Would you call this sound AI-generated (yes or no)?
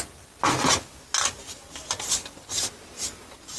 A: no